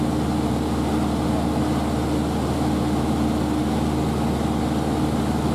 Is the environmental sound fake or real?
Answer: real